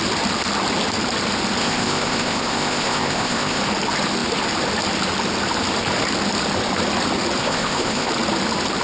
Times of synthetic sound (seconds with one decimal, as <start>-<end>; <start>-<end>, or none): 1.6-3.6; 7.4-8.1